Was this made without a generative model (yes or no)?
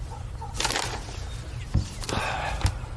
yes